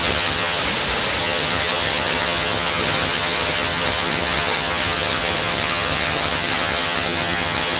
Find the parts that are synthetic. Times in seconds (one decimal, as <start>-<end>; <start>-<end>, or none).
0.0-0.6; 1.2-7.8